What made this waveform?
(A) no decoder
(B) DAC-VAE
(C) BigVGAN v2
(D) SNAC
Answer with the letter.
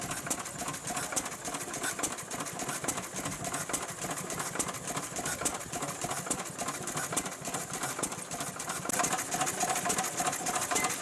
A